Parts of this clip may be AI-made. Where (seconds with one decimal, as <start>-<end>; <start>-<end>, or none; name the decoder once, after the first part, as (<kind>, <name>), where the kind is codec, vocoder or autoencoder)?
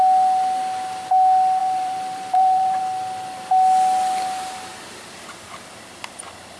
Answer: 1.6-2.8 (vocoder, BigVGAN v2)